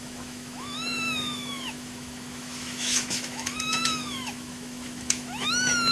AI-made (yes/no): yes